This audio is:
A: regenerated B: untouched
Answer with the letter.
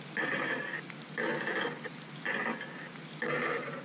B